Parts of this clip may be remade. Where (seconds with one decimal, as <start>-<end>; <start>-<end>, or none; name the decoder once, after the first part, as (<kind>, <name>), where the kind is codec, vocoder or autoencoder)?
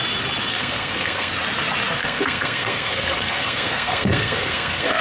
0.5-1.3 (codec, SNAC); 2.0-5.0